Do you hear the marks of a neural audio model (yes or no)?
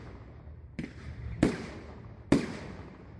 no